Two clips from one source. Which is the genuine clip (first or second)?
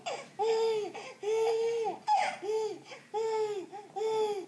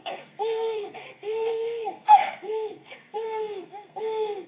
first